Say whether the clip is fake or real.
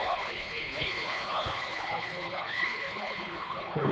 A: fake